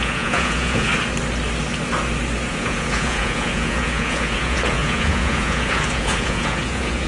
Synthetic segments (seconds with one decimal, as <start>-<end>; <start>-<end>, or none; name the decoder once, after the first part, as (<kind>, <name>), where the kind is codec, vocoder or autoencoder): 0.0-0.9 (vocoder, Vocos); 2.5-7.1